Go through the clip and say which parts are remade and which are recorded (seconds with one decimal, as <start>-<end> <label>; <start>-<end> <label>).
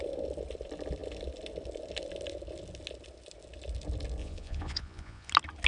0.0-4.2 recorded; 4.2-5.3 remade; 5.3-5.7 recorded